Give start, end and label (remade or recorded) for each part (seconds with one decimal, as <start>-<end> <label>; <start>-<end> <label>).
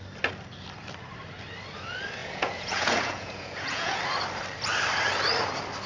0.0-2.2 recorded; 2.2-4.0 remade; 4.0-5.9 recorded